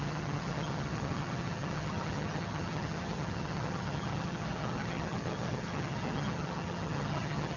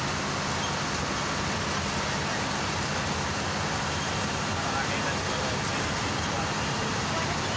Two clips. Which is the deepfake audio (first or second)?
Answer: first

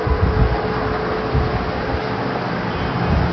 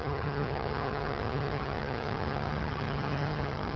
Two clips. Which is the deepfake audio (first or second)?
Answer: second